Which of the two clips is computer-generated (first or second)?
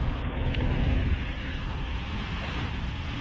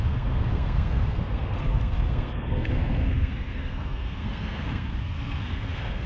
second